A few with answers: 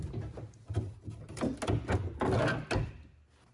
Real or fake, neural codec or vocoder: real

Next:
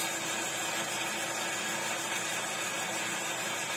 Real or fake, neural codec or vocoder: real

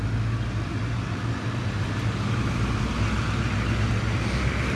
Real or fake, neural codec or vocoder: real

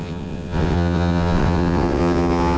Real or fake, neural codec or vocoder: fake, vocoder, WaveNeXt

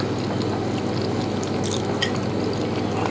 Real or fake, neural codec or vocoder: real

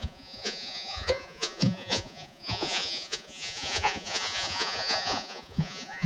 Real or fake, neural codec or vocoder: fake, vocoder, Vocos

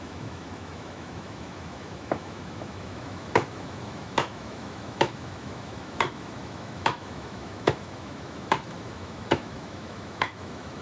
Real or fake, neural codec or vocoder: fake, autoencoder, DAC-VAE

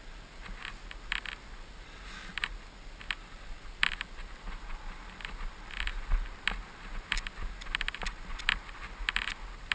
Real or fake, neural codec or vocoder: real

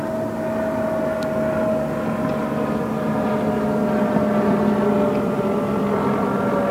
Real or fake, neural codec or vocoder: real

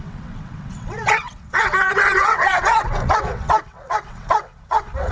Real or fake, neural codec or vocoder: fake, vocoder, WaveNeXt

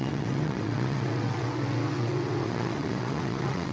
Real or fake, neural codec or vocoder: fake, vocoder, WaveNeXt